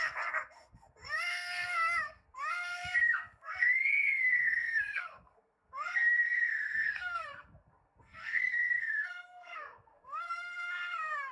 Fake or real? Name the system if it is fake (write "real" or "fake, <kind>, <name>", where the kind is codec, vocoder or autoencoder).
fake, codec, SNAC